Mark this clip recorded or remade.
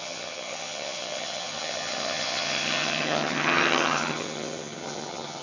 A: remade